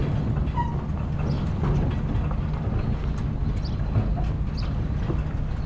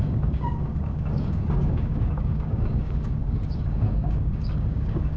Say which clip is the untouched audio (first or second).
first